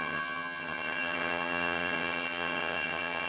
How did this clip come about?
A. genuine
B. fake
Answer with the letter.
B